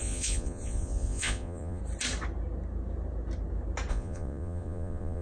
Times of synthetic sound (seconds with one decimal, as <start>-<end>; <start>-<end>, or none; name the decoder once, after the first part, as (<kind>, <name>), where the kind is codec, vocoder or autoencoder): 0.0-1.8 (vocoder, Vocos); 3.9-5.2